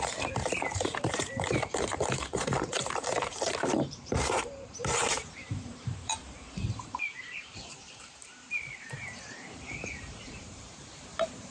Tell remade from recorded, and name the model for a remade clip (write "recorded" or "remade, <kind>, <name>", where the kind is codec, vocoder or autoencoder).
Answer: remade, vocoder, BigVGAN v2